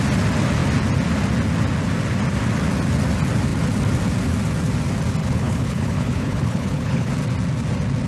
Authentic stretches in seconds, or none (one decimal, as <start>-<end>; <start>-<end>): 0.0-5.2; 7.1-8.1